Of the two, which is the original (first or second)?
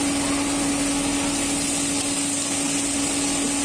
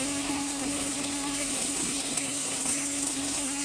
first